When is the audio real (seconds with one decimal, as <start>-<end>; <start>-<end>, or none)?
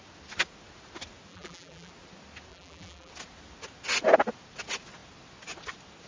0.0-1.3; 1.9-2.5; 3.1-6.1